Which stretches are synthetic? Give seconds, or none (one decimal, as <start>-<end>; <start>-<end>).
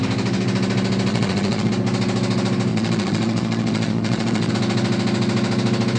1.1-1.7; 2.7-4.5